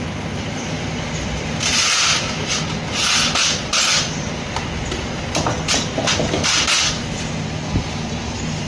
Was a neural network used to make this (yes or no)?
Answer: no